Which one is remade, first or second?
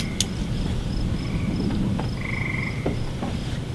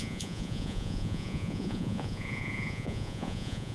second